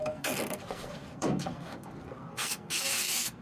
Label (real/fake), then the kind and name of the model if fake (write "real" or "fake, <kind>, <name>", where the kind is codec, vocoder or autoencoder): fake, codec, SNAC